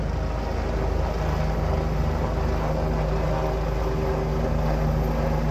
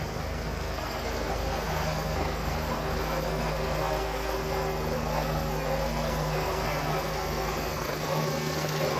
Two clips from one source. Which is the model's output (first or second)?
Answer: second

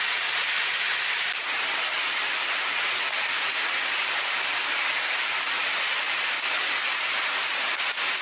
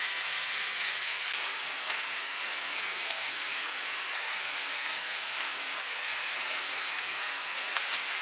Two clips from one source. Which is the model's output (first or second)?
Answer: second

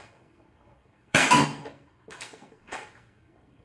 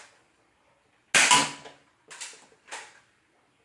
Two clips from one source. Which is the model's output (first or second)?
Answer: first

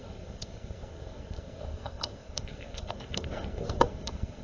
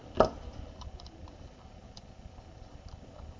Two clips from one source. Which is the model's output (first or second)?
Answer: first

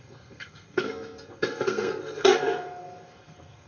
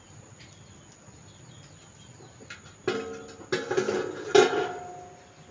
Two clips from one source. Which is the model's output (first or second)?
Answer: first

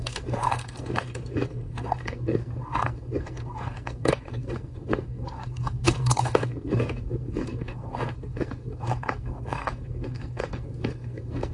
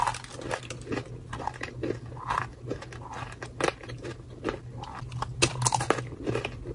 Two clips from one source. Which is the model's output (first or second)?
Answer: first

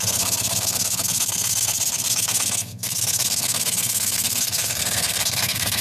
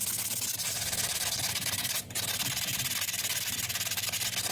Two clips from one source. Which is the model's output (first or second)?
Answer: first